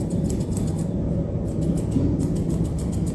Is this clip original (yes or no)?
yes